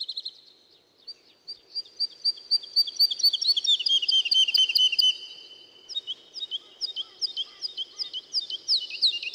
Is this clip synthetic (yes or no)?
no